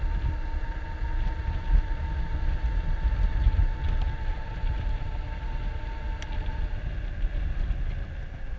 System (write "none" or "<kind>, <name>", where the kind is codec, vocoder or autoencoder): none